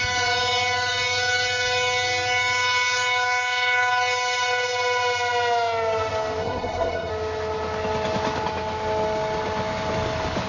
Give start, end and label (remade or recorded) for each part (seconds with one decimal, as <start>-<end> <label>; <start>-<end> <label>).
0.0-6.4 recorded; 6.4-7.1 remade; 7.1-10.5 recorded